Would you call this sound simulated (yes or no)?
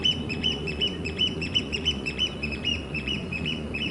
yes